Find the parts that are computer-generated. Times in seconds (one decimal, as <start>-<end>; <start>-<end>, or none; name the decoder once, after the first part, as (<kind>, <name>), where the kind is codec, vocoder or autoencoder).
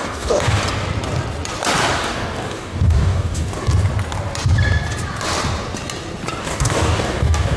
0.0-0.6 (codec, DAC); 2.0-3.6; 6.4-7.6